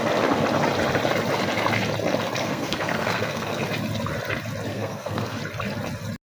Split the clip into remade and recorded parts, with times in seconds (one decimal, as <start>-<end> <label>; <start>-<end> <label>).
0.0-2.4 recorded; 2.4-3.6 remade; 3.6-4.7 recorded; 4.7-5.4 remade; 5.4-6.3 recorded